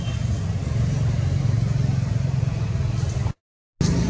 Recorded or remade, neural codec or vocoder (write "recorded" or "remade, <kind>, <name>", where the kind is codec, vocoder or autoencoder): recorded